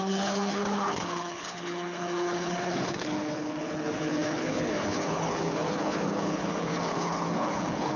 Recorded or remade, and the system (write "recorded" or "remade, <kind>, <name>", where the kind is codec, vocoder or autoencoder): remade, codec, HILCodec